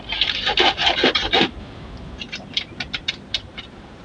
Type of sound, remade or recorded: recorded